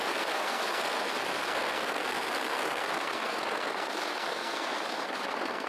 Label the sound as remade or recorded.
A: remade